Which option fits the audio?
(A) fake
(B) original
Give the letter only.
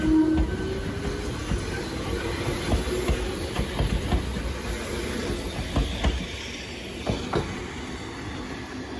B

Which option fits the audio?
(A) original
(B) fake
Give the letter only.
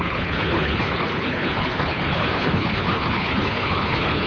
B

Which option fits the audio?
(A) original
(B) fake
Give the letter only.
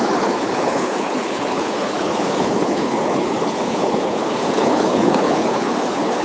B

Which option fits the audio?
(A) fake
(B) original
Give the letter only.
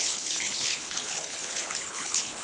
A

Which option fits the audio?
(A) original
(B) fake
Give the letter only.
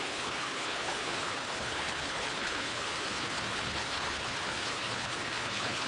B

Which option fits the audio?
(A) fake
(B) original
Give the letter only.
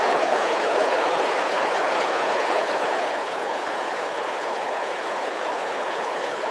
A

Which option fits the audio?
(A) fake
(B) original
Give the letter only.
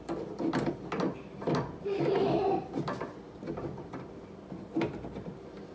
B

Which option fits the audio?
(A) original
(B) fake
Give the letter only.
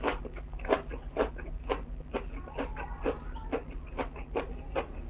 A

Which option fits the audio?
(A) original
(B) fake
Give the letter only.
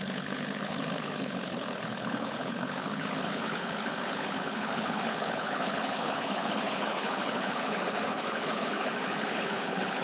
B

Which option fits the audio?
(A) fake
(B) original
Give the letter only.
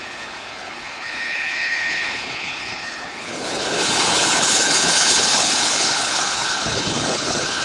A